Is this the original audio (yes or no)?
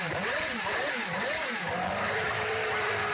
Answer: no